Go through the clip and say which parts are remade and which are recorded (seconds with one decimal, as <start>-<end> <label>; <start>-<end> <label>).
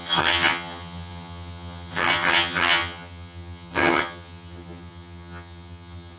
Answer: 0.0-6.2 remade